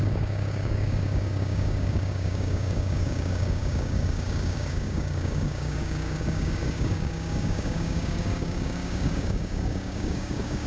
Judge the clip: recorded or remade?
remade